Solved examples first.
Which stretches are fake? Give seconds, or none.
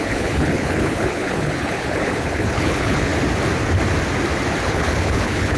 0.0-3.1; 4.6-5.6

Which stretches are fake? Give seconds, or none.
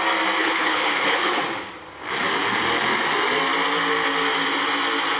0.4-1.4